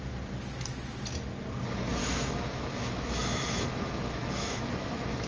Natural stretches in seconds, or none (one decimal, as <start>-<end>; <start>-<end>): 0.0-2.0